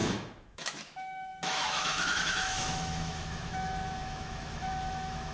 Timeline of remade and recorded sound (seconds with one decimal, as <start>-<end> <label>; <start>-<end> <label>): 0.0-5.3 remade